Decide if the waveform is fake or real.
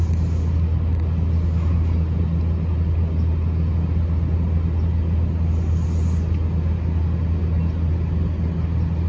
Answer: real